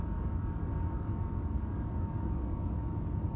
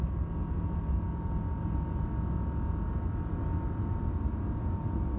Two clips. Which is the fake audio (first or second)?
first